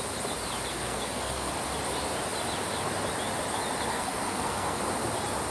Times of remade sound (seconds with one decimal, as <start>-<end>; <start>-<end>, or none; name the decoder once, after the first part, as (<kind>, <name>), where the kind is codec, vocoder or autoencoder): 0.7-1.5 (codec, SNAC); 3.9-4.8